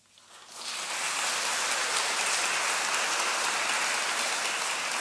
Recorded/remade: recorded